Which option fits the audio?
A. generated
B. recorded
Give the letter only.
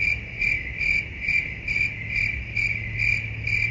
B